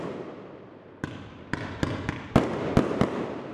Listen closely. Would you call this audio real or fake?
real